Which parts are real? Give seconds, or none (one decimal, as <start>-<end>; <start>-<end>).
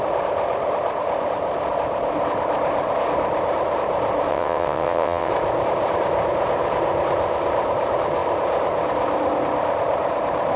0.0-4.3; 5.3-10.6